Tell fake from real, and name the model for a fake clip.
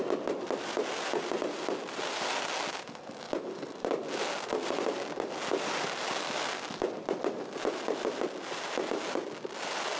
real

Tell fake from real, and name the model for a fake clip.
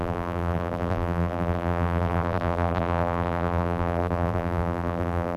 fake, vocoder, BigVGAN v2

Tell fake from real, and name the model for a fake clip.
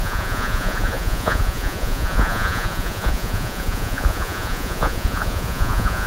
fake, vocoder, Vocos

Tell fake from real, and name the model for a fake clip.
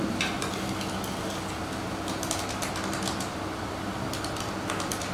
real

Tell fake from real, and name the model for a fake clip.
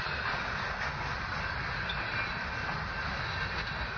real